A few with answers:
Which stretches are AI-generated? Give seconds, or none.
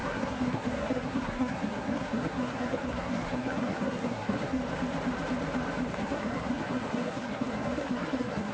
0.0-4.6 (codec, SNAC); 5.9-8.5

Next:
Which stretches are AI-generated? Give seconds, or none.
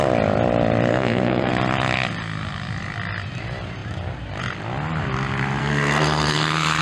0.9-1.5 (codec, SNAC); 5.6-6.8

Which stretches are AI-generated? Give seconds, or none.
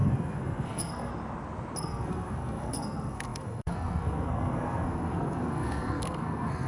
0.0-1.1 (codec, SNAC); 1.8-6.7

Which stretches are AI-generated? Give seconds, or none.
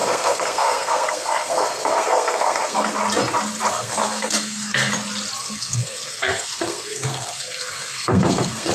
0.0-2.9 (codec, SNAC); 3.7-4.9; 5.4-8.7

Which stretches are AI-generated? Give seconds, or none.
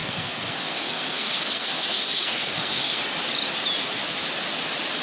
0.0-3.0 (codec, SNAC)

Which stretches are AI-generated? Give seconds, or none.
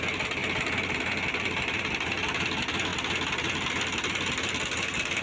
none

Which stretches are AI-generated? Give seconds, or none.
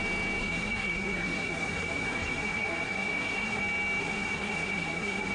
0.4-3.6 (codec, SNAC); 4.0-5.3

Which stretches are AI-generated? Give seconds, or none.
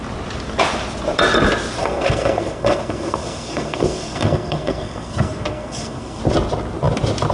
1.8-6.2 (codec, SNAC)